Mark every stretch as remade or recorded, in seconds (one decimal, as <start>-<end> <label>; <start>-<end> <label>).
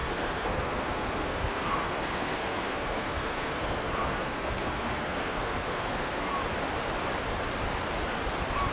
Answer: 0.0-6.3 remade; 6.3-8.7 recorded